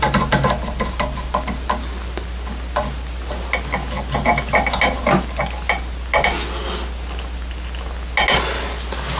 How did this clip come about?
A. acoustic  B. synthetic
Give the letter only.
A